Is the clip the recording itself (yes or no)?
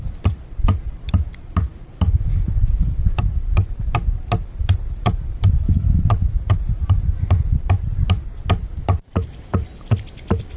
yes